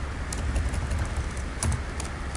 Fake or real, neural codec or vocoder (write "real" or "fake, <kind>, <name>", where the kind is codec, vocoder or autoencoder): real